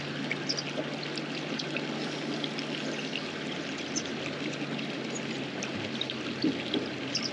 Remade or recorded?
recorded